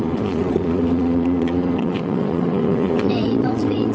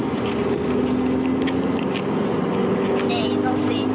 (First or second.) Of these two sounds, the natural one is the second